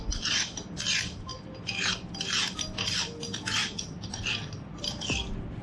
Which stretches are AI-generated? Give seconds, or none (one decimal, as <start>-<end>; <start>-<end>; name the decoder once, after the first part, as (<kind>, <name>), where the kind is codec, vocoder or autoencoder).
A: 3.6-4.8 (vocoder, BigVGAN v2)

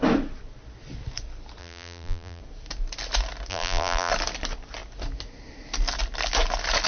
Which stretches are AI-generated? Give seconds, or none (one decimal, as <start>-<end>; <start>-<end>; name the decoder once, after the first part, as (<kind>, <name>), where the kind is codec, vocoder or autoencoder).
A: 1.6-2.4 (vocoder, BigVGAN v2); 3.5-4.1

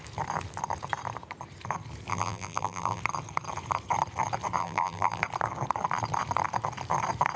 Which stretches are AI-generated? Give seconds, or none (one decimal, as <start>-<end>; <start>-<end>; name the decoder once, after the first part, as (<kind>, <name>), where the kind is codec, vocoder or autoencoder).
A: 2.1-3.0 (vocoder, BigVGAN v2); 4.6-5.2

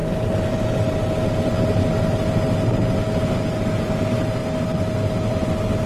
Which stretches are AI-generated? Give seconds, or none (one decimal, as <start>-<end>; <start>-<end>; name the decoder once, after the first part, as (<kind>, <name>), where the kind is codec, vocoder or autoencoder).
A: none

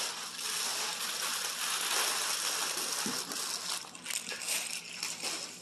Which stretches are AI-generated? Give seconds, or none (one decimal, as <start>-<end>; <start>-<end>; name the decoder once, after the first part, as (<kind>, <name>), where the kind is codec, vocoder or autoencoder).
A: none